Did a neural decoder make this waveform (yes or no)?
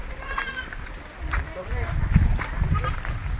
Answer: no